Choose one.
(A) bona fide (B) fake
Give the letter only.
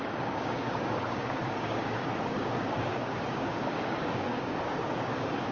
B